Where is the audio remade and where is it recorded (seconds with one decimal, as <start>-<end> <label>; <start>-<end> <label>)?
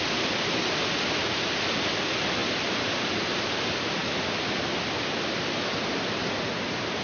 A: 0.0-7.0 recorded